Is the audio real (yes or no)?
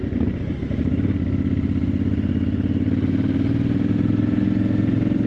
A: yes